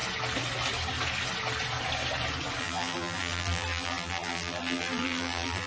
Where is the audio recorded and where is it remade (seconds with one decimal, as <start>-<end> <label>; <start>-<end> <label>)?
0.0-2.6 recorded; 2.6-5.7 remade